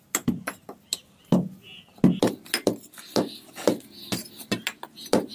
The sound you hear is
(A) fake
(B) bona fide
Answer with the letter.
B